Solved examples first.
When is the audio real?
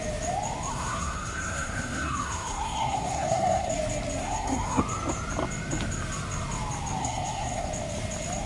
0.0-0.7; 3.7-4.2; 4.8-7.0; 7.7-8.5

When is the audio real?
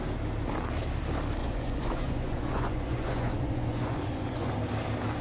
0.0-1.4; 4.5-5.2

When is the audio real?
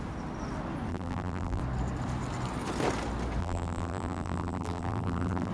0.0-0.9; 1.6-3.4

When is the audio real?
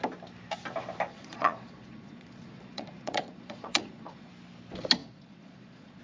0.0-1.1; 4.3-5.0